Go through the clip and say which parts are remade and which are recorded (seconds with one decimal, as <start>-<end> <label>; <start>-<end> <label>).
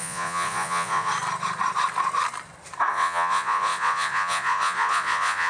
0.0-1.1 remade; 1.1-2.9 recorded; 2.9-5.5 remade